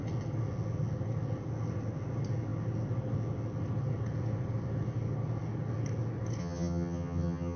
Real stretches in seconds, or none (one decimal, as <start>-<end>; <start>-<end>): 0.0-6.4